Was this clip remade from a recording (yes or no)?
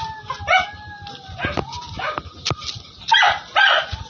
no